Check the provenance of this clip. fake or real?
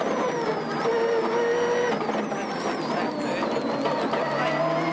real